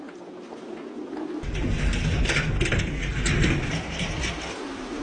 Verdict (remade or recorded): recorded